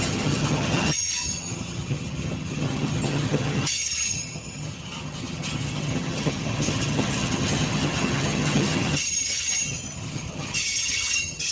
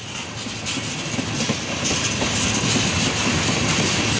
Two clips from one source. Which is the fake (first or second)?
first